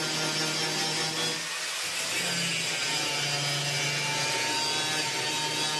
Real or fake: real